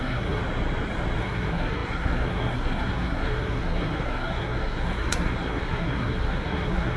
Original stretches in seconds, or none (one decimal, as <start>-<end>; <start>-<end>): 0.4-1.2

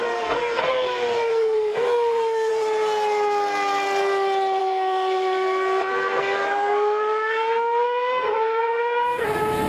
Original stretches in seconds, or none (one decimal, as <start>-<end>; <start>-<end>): 2.5-4.6

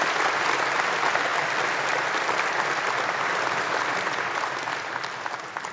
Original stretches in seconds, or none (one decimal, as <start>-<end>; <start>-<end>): 0.0-5.7

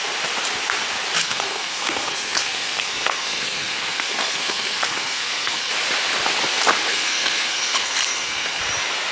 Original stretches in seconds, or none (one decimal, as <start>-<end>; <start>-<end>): 0.0-1.2; 5.7-6.9; 8.6-9.1